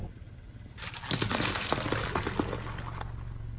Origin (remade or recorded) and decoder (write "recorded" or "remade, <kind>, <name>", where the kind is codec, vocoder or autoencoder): recorded